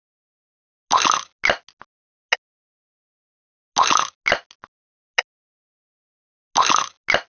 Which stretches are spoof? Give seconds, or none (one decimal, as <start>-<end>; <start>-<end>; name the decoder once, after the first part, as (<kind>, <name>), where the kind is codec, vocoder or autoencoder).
none